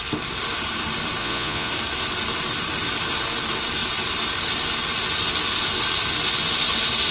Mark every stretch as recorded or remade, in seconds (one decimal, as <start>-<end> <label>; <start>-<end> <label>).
0.0-1.2 recorded; 1.2-1.7 remade; 1.7-7.1 recorded